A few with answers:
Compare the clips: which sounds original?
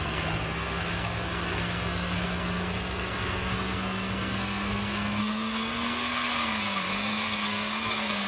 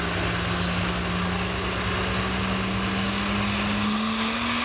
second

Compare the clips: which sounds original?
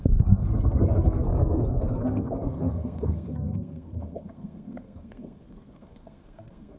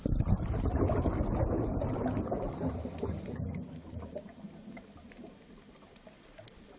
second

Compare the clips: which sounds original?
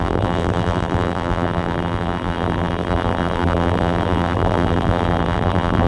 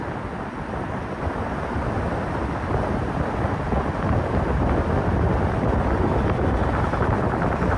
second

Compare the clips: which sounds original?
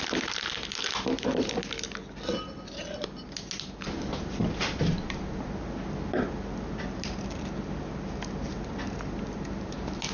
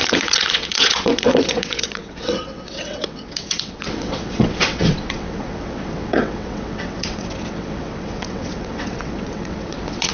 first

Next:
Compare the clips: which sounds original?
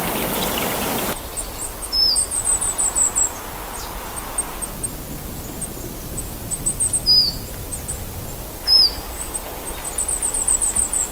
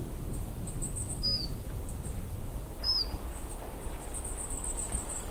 first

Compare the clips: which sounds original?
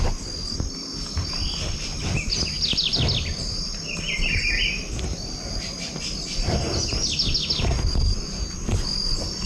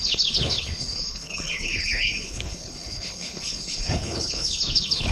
first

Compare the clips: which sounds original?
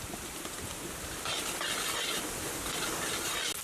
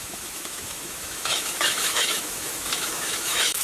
first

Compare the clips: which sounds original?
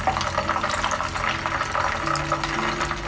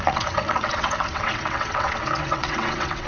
first